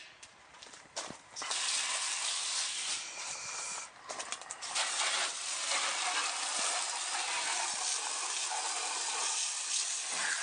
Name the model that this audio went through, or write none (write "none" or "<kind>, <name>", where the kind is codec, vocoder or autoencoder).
none